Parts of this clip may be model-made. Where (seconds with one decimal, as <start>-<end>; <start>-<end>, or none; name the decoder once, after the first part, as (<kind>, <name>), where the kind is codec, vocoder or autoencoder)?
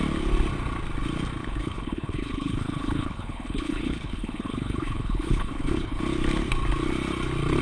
1.4-6.0 (codec, HILCodec)